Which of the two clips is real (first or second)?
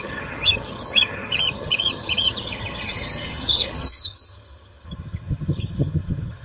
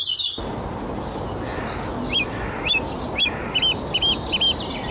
second